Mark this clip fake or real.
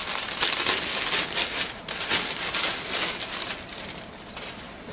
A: real